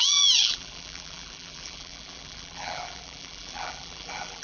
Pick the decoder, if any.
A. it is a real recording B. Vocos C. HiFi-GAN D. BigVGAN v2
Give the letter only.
D